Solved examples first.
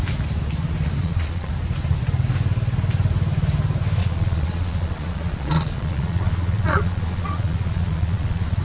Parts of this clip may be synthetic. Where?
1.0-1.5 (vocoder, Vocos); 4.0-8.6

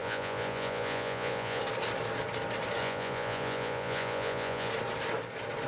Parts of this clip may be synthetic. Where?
0.0-1.6 (vocoder, Vocos); 2.8-4.7

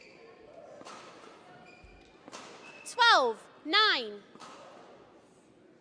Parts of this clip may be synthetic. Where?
none

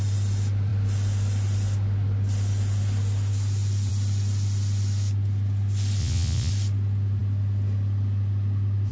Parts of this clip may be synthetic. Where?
6.0-6.5 (vocoder, Vocos)

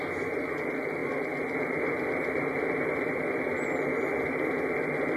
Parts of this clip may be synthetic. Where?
none